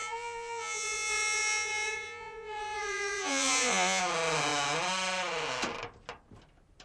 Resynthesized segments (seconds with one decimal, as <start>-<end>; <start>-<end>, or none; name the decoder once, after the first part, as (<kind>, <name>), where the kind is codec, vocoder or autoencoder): 0.0-4.0 (vocoder, Vocos)